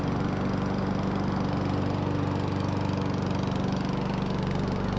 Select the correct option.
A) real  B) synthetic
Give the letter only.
A